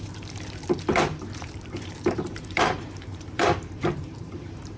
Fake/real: fake